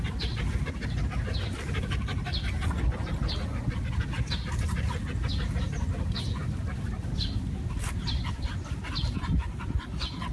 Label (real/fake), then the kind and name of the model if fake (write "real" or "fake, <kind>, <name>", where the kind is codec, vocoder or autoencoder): real